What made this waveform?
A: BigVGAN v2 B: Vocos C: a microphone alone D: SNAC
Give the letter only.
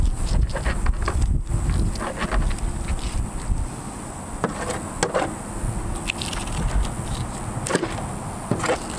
C